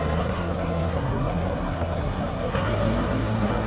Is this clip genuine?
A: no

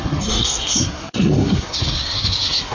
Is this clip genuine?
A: no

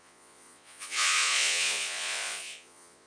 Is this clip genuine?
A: no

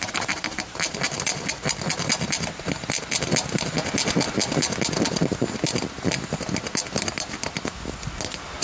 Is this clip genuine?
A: yes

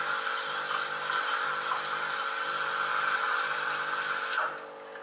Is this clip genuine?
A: yes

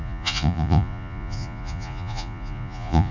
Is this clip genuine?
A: no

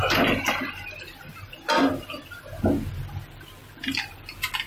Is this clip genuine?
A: yes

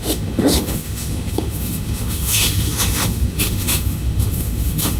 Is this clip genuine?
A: no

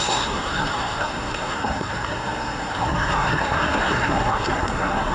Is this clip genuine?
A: no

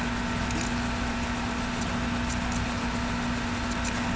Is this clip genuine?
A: yes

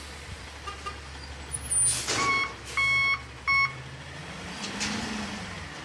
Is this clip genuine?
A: yes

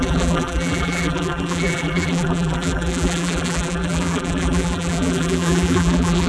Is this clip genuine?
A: no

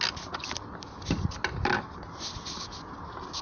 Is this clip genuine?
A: yes